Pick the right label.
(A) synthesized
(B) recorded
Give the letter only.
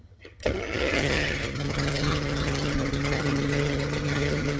A